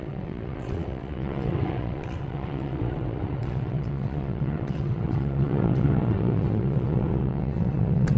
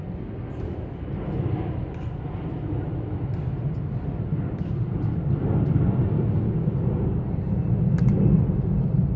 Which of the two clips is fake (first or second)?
first